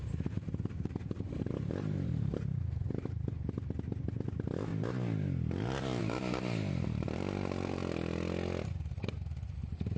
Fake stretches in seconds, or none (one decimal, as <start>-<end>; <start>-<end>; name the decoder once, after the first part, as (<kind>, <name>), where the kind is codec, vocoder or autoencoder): 0.0-4.7 (vocoder, BigVGAN v2); 6.0-7.8; 9.6-10.0